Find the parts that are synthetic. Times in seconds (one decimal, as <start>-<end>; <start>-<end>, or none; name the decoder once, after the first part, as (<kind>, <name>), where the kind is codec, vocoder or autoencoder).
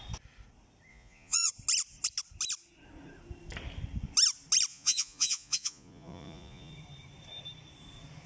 0.9-1.5 (vocoder, Vocos); 4.7-6.7